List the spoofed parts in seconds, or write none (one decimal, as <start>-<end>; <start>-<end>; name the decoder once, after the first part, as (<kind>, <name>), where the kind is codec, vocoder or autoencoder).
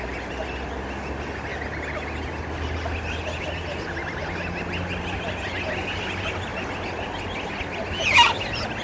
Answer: none